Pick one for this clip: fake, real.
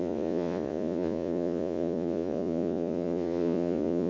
fake